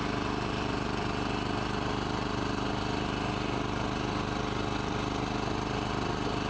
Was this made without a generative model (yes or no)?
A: yes